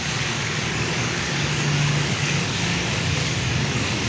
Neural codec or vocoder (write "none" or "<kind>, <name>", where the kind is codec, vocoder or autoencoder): codec, DAC